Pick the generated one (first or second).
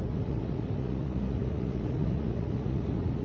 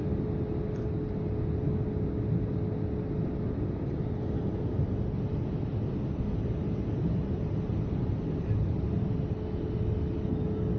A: first